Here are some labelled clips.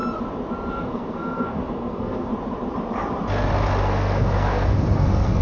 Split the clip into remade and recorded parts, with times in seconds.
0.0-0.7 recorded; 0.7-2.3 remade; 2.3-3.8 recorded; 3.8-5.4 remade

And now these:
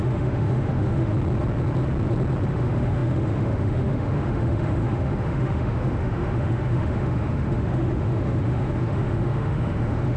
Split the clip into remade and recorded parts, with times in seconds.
0.0-1.1 remade; 1.1-2.5 recorded; 2.5-10.2 remade